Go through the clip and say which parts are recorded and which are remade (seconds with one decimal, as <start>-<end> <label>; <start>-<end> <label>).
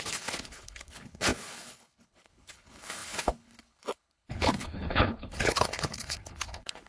0.0-6.9 remade